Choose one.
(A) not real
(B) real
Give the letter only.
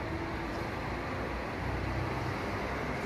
B